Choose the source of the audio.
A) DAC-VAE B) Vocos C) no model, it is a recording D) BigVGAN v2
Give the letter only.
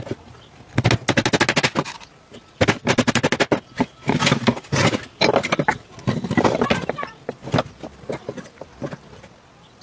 C